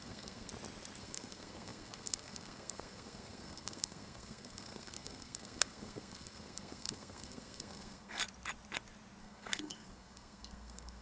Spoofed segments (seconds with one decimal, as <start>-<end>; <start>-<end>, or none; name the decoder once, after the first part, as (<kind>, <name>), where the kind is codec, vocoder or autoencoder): 0.0-0.5 (codec, SNAC); 1.0-8.2; 9.2-11.0